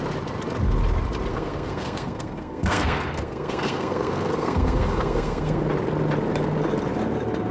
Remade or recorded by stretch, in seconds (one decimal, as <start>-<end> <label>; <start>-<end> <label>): 0.0-1.3 recorded; 1.3-5.6 remade; 5.6-7.5 recorded